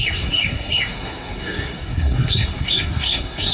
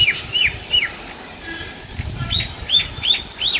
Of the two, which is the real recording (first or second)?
second